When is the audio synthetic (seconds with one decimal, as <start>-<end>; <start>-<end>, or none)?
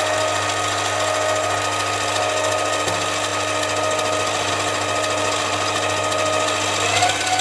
none